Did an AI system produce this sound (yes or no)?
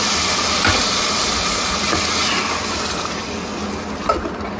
no